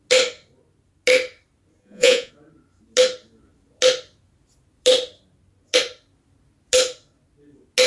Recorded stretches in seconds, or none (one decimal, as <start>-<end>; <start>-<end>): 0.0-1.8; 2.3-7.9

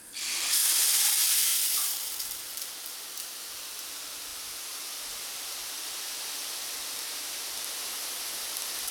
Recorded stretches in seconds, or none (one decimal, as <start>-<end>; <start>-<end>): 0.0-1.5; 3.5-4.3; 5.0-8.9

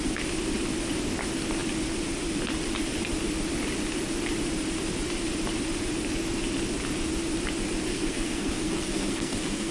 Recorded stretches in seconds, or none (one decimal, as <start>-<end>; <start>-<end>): 0.0-7.9

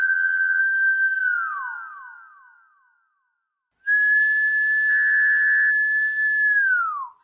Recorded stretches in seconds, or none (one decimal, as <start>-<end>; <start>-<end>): 0.6-4.9; 5.7-7.2

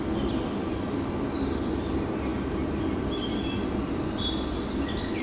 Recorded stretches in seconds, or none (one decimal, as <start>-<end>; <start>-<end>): 0.0-5.2

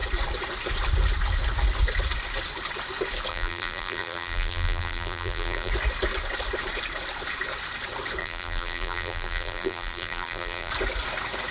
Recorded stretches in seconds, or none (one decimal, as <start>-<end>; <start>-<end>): 0.0-3.3; 5.7-8.2; 10.7-11.5

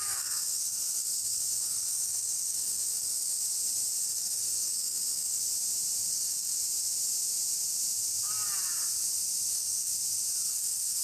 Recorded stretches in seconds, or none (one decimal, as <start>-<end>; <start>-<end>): 3.4-4.0; 5.4-6.1; 6.6-9.5; 9.9-10.5

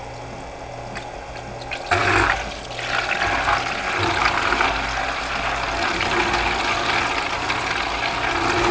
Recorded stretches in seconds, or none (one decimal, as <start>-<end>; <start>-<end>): 0.0-8.7